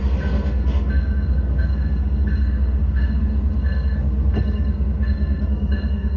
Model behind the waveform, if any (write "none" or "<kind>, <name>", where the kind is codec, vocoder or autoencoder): codec, SNAC